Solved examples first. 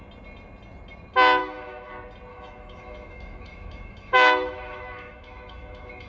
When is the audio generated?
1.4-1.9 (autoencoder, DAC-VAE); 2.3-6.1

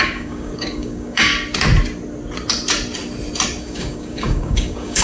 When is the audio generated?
0.0-1.3 (codec, DAC); 3.6-5.0